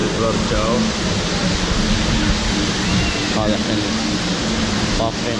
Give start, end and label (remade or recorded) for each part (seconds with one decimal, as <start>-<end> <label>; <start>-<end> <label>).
0.0-5.4 recorded